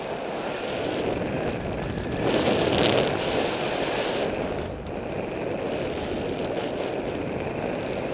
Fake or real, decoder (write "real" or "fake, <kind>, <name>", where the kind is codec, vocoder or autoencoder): real